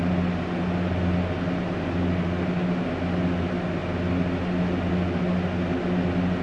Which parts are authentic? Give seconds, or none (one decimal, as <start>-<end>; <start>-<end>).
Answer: 0.0-6.4